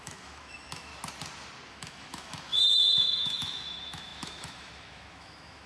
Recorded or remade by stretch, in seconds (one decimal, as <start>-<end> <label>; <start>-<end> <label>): 0.0-0.9 remade; 0.9-1.7 recorded; 1.7-5.7 remade